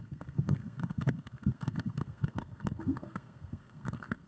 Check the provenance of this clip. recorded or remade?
remade